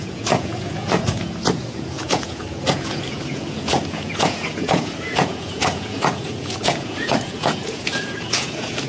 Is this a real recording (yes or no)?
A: no